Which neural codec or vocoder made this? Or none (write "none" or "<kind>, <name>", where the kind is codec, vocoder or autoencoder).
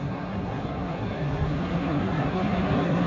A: codec, SNAC